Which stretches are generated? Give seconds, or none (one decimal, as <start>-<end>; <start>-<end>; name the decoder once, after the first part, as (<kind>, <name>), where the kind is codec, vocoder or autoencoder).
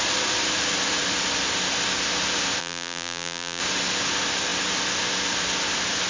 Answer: 2.6-3.6 (vocoder, BigVGAN v2)